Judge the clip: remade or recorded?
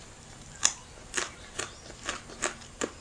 recorded